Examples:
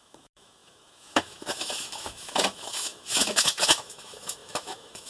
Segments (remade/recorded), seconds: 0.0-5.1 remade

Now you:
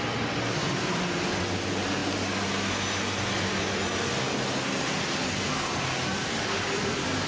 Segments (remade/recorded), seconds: 0.0-0.6 recorded; 0.6-1.4 remade; 1.4-7.3 recorded

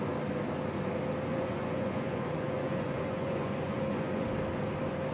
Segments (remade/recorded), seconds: 0.0-1.3 recorded; 1.3-4.2 remade; 4.2-5.1 recorded

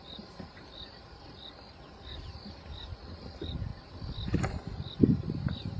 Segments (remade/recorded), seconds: 0.0-5.8 recorded

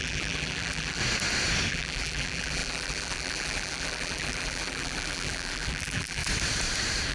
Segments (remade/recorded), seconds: 0.0-1.0 remade; 1.0-1.7 recorded; 1.7-6.2 remade; 6.2-7.1 recorded

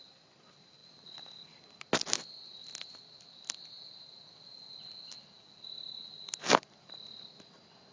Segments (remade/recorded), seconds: 0.0-7.9 recorded

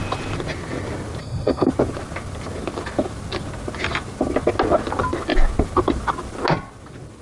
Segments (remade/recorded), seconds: 0.0-1.2 recorded; 1.2-1.7 remade; 1.7-7.2 recorded

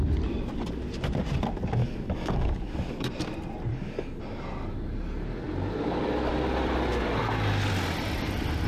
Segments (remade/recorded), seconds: 0.0-1.8 recorded; 1.8-3.1 remade; 3.1-3.7 recorded; 3.7-4.2 remade; 4.2-8.7 recorded